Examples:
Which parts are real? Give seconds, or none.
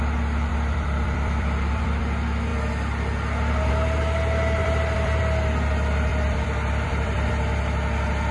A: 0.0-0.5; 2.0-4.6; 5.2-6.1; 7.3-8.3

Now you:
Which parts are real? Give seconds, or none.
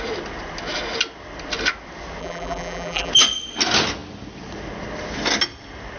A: 0.0-2.2; 3.1-6.0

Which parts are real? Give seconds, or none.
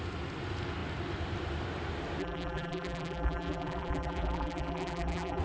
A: 0.0-2.2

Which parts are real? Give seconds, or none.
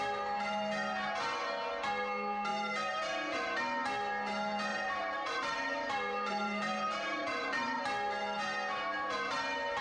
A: 0.0-2.5; 3.0-4.7; 7.8-9.8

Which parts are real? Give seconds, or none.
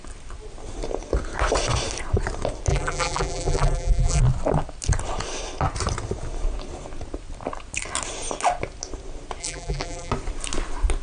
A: 0.0-2.7; 4.2-9.4; 10.1-11.0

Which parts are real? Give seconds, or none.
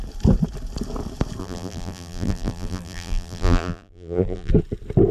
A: 0.0-1.4; 4.5-5.1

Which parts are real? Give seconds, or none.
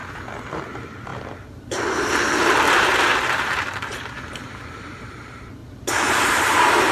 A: 0.0-0.5; 5.6-6.3